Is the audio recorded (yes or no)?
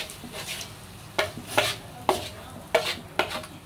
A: yes